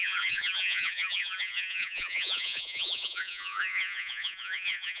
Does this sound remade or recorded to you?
remade